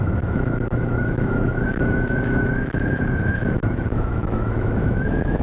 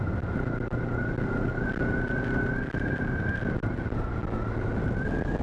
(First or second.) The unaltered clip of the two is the second